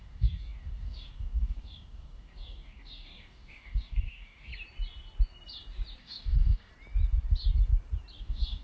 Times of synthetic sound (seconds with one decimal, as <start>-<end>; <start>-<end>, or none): 0.0-4.5; 6.0-6.7; 8.2-8.6